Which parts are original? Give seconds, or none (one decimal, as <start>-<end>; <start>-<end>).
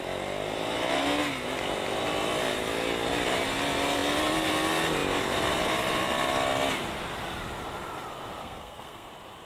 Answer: 0.0-8.4; 9.1-9.5